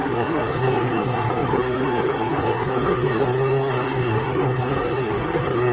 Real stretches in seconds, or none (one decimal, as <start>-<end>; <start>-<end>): none